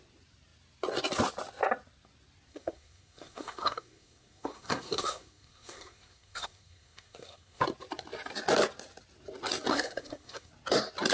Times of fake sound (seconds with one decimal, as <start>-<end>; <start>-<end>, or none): 2.5-7.6; 9.7-10.5